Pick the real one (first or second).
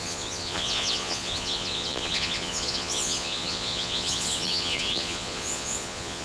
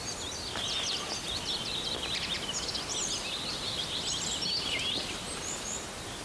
second